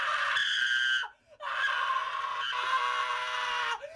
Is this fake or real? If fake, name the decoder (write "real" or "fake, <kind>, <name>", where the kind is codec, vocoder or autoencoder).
real